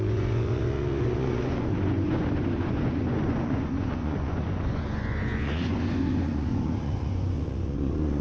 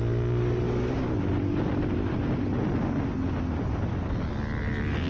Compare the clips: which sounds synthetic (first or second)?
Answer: first